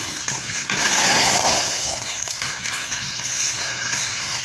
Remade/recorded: remade